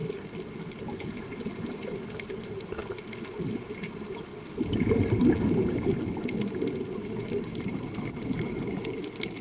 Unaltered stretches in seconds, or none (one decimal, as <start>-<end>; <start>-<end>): 0.0-0.7; 2.8-3.6; 4.3-6.9